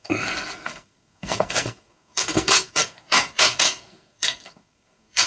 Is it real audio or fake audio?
fake